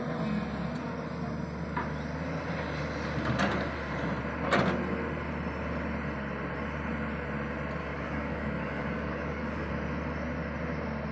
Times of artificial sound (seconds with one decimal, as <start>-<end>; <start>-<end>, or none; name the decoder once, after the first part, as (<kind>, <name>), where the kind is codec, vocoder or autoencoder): 7.8-9.7 (codec, DAC)